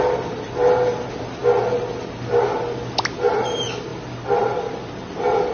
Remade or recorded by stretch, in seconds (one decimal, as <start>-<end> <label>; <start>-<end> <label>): 0.0-5.5 recorded